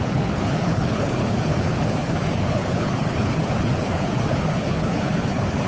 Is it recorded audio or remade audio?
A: remade